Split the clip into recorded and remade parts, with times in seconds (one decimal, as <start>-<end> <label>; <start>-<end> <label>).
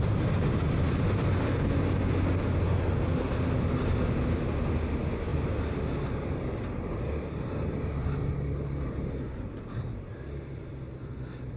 0.0-11.6 recorded